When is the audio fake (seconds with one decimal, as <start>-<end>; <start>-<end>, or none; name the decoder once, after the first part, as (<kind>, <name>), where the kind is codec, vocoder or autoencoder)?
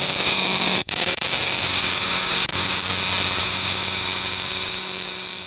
0.0-2.9 (codec, DAC); 3.4-5.5